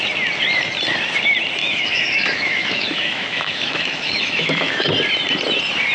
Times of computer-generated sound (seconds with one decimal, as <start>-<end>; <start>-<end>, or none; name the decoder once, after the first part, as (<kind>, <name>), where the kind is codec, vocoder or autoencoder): 1.6-4.9 (autoencoder, DAC-VAE)